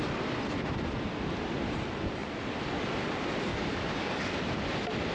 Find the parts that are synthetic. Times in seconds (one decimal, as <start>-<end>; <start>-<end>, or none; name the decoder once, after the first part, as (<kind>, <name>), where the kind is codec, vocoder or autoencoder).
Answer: 3.5-4.2 (codec, DAC)